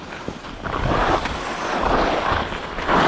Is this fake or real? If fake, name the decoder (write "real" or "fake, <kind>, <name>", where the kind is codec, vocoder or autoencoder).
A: real